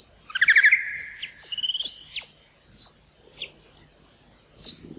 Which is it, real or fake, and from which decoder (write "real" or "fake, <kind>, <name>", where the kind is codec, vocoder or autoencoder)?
real